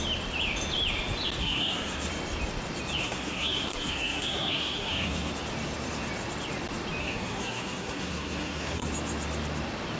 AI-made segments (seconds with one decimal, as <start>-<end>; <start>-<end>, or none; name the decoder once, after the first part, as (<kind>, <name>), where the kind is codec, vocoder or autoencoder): 1.4-2.1 (codec, SNAC); 3.0-5.3; 7.0-8.9